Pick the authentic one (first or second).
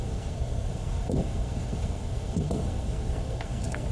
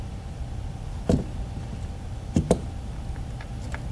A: second